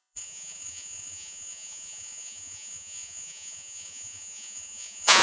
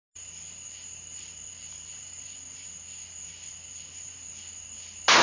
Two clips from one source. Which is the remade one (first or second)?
first